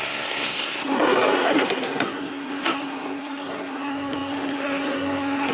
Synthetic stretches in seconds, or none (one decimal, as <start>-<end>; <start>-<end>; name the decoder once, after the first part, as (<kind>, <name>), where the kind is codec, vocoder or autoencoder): 0.0-5.5 (codec, SNAC)